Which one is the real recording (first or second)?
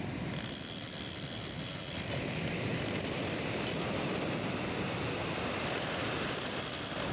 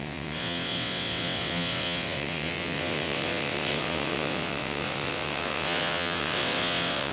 first